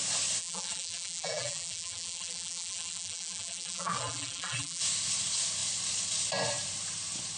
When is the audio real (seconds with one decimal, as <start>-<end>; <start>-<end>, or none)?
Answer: 0.0-0.4; 4.8-7.4